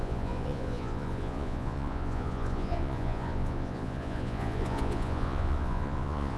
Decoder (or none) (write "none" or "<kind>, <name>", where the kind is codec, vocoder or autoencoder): vocoder, Vocos